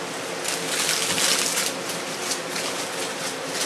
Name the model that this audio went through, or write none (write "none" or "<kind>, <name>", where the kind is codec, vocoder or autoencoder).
none